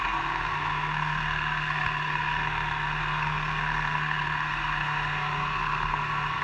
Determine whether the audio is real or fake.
fake